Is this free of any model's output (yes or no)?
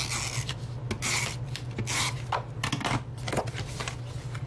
yes